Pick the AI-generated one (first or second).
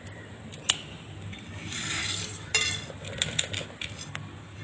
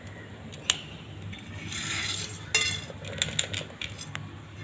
first